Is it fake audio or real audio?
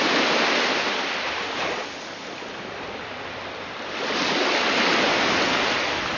real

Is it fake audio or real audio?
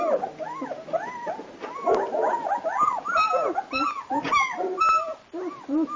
real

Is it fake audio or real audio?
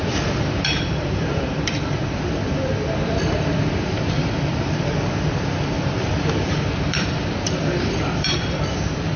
fake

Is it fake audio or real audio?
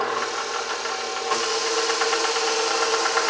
real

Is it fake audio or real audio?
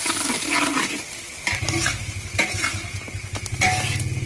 real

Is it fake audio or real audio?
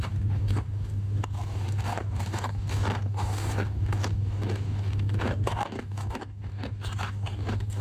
fake